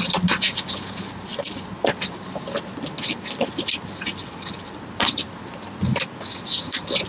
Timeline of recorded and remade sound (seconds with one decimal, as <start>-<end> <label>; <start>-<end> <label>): 0.0-7.1 recorded